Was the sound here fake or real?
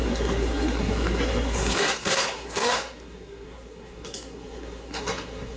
fake